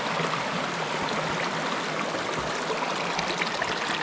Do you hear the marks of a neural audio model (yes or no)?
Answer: no